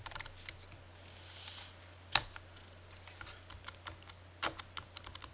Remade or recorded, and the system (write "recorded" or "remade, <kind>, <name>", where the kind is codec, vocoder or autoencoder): recorded